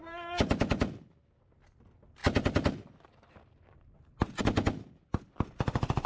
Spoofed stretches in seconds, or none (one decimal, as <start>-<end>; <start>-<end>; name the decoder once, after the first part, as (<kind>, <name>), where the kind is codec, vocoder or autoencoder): 2.2-4.4 (vocoder, BigVGAN v2)